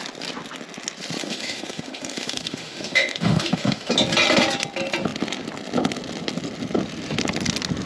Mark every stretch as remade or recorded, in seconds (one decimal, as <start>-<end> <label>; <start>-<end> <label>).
0.0-1.2 recorded; 1.2-3.9 remade; 3.9-7.9 recorded